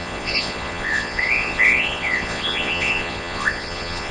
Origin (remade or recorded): remade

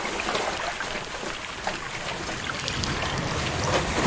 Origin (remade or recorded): recorded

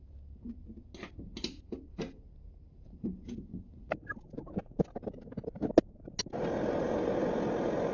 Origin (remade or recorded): recorded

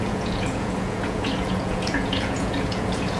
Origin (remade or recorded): remade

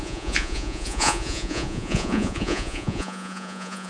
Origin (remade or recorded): remade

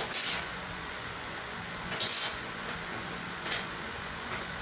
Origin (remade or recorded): remade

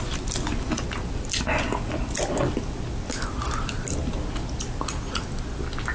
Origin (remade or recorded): recorded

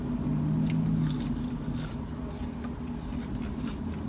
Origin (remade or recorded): recorded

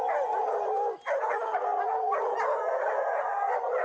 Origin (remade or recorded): recorded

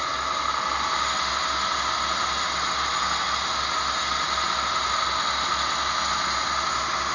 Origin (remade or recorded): recorded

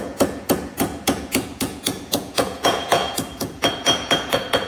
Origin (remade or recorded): remade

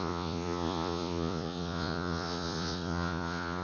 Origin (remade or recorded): remade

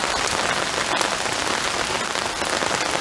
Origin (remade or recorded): recorded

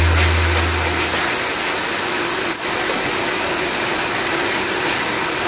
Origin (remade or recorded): recorded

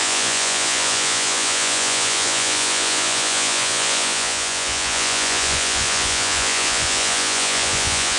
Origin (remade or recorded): remade